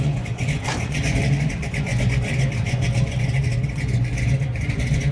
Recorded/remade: remade